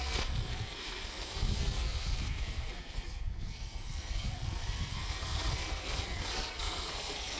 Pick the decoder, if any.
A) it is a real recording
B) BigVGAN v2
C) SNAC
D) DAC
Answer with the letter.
C